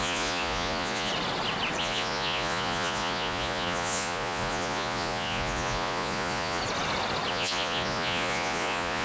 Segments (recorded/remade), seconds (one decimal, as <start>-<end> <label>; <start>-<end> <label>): 0.0-1.1 remade; 1.1-1.8 recorded; 1.8-6.6 remade; 6.6-7.3 recorded; 7.3-9.0 remade